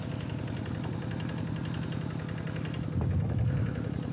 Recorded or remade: recorded